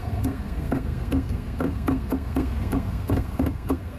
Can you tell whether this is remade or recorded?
remade